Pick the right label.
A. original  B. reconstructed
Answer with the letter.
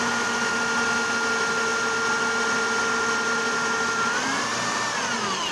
A